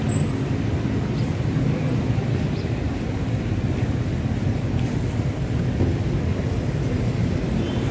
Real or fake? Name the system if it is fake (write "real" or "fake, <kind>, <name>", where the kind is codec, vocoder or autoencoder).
real